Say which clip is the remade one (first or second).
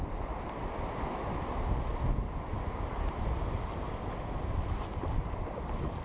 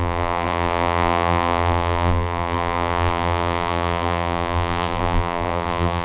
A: second